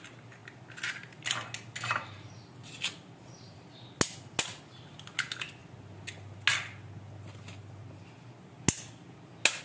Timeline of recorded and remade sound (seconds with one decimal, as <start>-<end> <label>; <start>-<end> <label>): 0.0-9.6 recorded